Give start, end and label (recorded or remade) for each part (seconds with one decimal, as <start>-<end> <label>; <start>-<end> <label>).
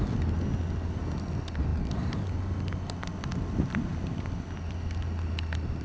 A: 0.0-5.8 recorded